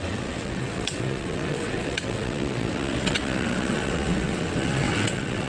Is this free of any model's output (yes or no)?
no